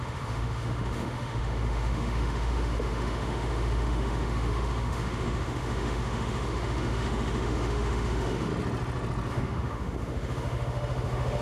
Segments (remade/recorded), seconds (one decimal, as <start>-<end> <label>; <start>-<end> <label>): 0.0-8.5 remade; 8.5-9.3 recorded; 9.3-11.4 remade